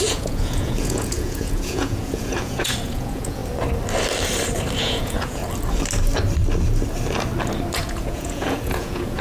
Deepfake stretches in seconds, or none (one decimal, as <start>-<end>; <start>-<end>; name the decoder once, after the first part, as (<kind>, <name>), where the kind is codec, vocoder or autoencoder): 0.0-3.4 (vocoder, Vocos); 4.8-5.4; 7.8-9.2